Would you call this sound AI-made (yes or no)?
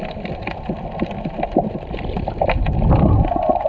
no